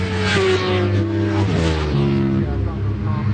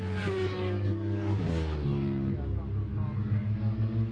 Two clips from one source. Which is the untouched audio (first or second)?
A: first